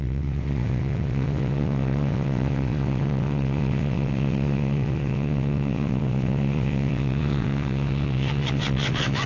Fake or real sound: fake